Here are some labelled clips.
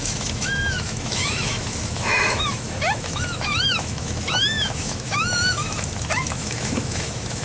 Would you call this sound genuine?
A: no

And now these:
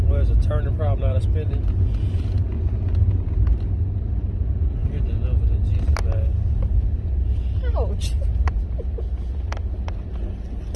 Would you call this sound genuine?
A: yes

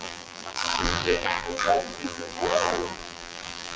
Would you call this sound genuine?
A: no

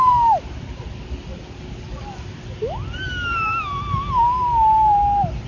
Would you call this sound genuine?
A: yes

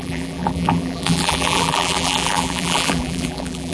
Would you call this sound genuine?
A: no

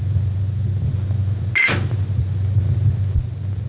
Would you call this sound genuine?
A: yes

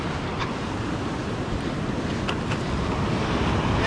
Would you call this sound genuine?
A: yes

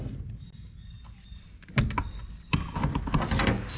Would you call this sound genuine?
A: yes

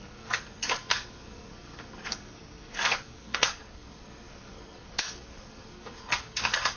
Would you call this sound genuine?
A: no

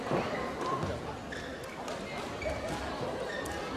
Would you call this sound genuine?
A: yes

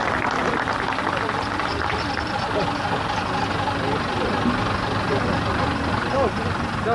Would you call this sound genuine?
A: yes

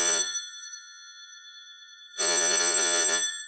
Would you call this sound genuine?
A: no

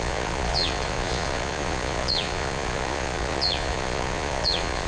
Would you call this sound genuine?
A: no